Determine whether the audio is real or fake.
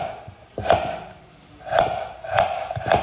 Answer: real